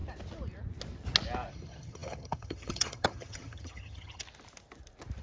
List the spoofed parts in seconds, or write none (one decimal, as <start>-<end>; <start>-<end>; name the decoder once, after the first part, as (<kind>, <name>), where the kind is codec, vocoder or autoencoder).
1.5-4.2 (vocoder, HiFi-GAN)